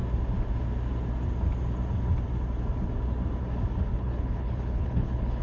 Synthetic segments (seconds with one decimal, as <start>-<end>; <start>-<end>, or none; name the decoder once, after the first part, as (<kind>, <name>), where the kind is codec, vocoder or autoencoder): 3.9-5.4 (codec, HILCodec)